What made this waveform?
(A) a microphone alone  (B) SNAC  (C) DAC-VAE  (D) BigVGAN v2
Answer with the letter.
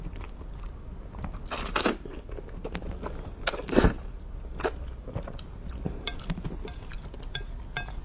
A